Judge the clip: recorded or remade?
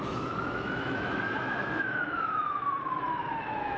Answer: remade